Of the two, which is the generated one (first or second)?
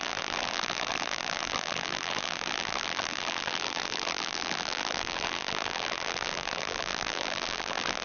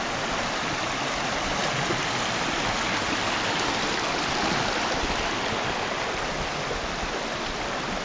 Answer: first